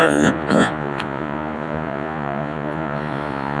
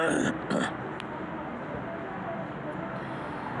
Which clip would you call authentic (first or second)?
second